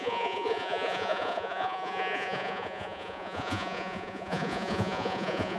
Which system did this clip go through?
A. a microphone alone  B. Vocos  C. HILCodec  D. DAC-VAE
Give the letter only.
B